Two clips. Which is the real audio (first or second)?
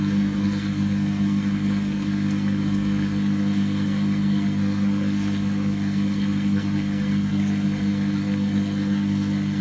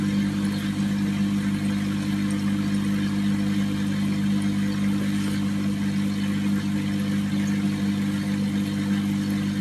second